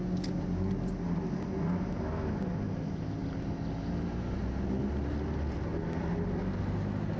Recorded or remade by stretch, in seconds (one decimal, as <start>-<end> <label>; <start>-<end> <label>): 0.0-7.2 recorded